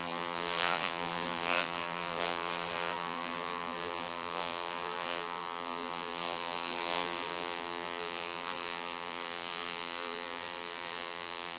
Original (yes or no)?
no